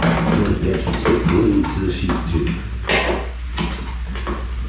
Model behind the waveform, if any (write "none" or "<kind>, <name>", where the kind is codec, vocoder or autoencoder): none